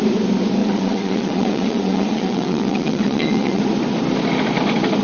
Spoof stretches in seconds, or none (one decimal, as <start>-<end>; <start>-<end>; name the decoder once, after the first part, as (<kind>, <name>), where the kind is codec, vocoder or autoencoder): 0.6-3.6 (vocoder, WaveNeXt)